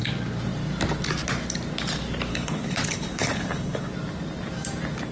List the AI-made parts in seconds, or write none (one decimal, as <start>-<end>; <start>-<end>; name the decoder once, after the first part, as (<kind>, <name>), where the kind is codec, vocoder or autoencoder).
2.3-3.9 (codec, HILCodec)